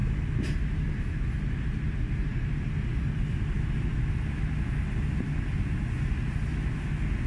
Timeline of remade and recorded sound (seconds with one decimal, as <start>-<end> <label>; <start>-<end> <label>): 0.0-7.3 recorded